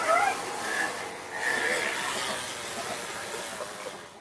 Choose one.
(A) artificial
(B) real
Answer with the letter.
B